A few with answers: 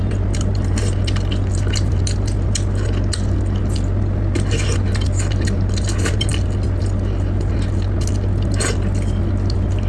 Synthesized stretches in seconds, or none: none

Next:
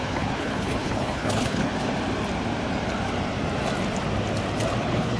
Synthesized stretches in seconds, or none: 0.0-1.7 (codec, HILCodec); 4.8-5.2